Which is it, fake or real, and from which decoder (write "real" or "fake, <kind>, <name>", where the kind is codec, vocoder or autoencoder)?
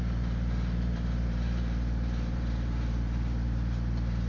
fake, vocoder, BigVGAN v2